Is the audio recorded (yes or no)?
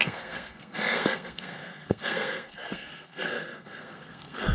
no